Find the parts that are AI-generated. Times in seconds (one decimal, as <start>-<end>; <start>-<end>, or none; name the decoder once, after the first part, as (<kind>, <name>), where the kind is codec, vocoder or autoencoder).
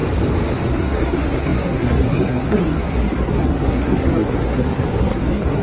0.7-5.6 (codec, SNAC)